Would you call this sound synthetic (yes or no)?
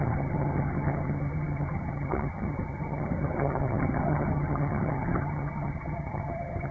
yes